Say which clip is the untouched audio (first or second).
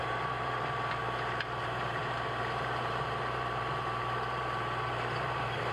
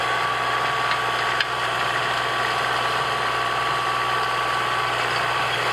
second